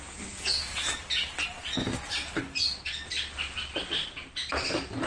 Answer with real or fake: real